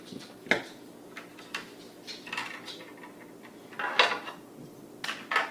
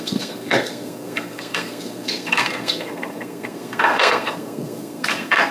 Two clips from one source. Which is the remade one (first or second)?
second